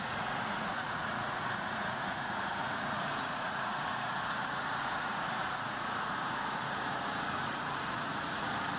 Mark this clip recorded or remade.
remade